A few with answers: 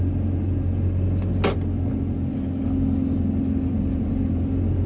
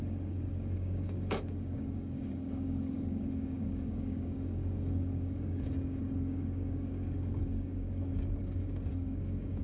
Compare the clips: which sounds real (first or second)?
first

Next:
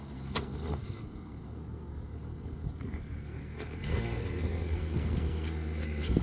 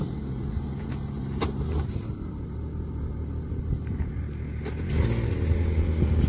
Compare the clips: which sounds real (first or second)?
second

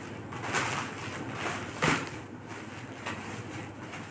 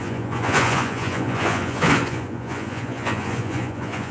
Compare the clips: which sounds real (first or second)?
first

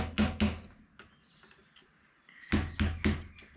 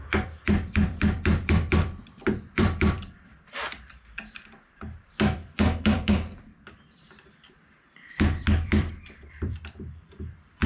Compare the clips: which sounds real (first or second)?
first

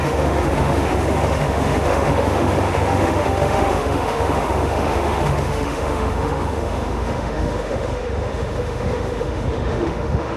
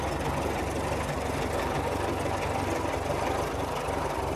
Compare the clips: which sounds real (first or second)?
second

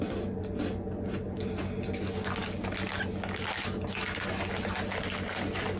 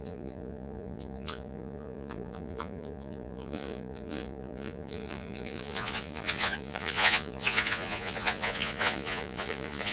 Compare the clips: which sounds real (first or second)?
first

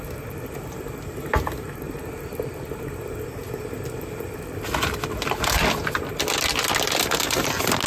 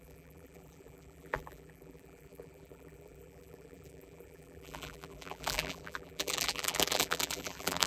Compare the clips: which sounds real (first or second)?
first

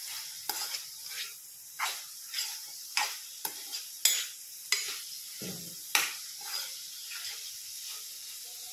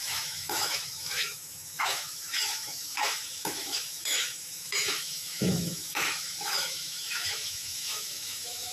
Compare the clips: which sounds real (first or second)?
first